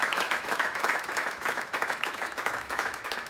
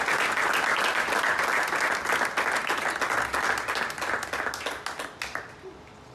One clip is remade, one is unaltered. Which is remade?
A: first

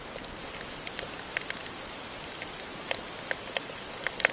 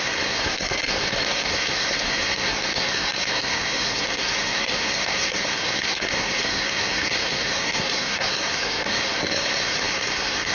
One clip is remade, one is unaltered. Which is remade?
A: second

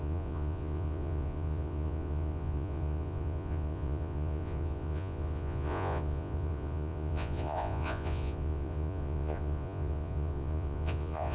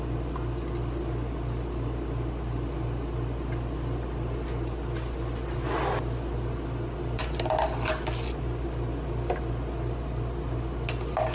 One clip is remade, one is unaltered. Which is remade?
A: first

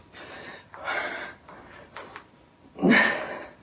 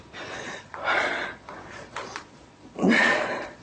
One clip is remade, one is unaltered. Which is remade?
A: second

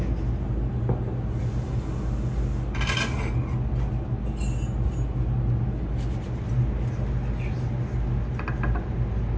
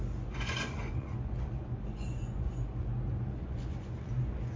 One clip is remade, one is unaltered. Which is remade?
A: second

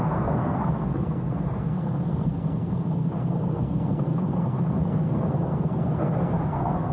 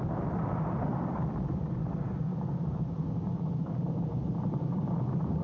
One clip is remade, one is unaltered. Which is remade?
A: first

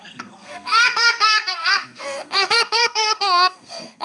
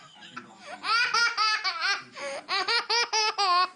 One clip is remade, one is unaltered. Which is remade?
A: first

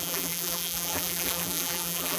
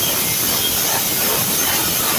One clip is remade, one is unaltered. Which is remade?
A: first